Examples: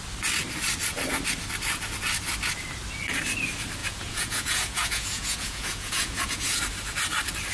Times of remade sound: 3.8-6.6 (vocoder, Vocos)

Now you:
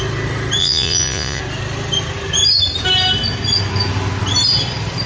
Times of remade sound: 0.6-1.4 (vocoder, Vocos)

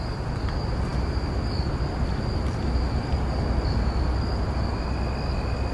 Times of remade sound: none